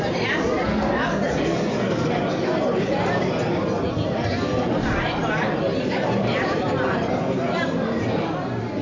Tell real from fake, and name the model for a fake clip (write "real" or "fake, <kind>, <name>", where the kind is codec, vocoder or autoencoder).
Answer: real